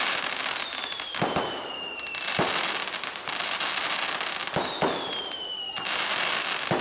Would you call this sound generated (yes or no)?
no